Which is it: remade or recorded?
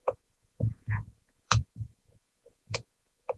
remade